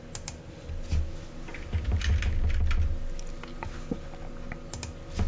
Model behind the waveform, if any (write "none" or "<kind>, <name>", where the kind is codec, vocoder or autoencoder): none